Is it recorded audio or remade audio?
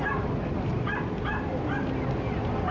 recorded